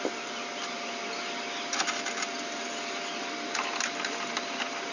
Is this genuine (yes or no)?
yes